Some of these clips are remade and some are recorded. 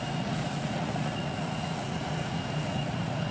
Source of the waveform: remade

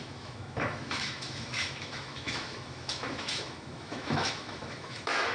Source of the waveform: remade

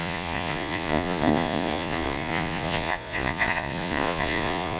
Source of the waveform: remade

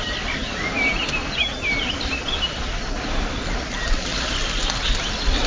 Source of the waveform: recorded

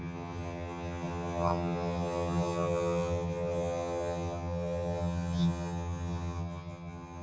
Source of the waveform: remade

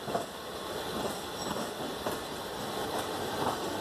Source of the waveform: recorded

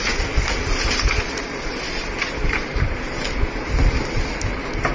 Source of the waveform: recorded